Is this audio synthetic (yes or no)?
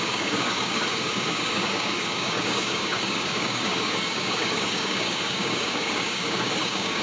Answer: yes